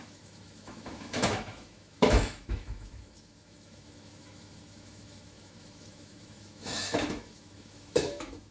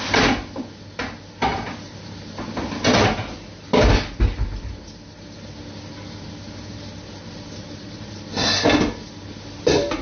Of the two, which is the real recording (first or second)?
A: second